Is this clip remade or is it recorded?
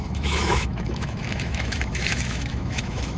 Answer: remade